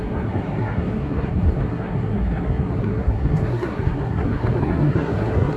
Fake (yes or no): yes